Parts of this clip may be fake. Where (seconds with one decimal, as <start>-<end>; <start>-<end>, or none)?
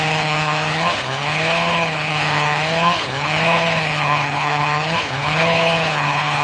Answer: 0.0-6.4